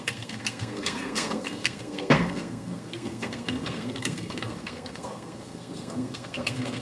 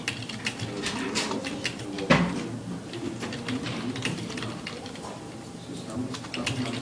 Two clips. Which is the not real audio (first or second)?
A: first